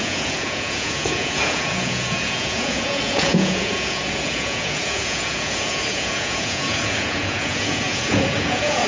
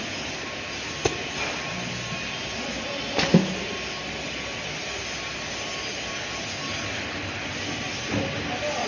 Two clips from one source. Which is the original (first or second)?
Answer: second